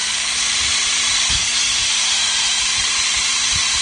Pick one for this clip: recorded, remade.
remade